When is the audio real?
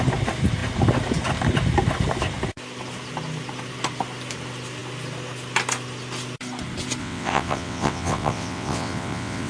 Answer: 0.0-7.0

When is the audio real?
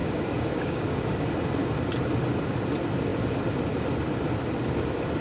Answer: 1.3-5.2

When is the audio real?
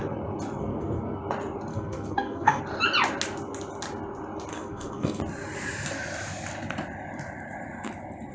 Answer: 0.0-0.6; 1.2-1.7; 2.6-4.5; 5.2-8.3